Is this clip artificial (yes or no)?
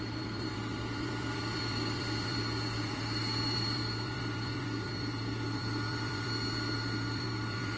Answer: yes